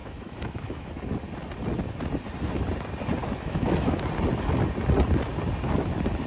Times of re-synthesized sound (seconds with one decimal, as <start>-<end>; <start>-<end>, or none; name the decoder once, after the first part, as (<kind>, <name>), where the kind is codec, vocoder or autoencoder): 0.0-0.9 (autoencoder, DAC-VAE); 3.2-4.0

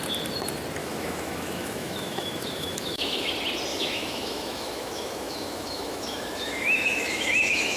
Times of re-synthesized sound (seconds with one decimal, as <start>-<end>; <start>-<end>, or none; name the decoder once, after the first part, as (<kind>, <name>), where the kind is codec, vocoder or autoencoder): 0.8-3.3 (autoencoder, DAC-VAE); 3.7-7.8